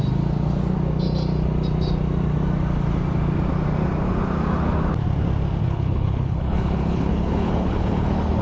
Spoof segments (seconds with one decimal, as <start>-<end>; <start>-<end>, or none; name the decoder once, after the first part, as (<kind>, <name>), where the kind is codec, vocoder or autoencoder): 5.6-8.4 (codec, HILCodec)